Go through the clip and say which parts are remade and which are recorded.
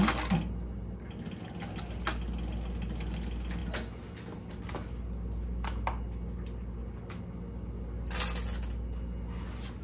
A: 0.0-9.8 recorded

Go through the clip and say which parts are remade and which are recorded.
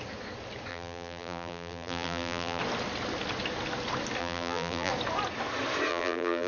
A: 0.0-0.7 recorded; 0.7-2.6 remade; 2.6-4.2 recorded; 4.2-4.9 remade; 4.9-5.9 recorded; 5.9-6.5 remade